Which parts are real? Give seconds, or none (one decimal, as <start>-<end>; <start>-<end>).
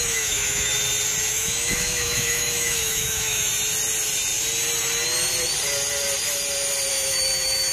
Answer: 0.7-1.3; 3.5-6.9